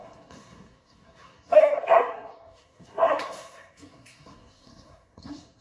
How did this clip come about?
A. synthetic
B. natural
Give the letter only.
A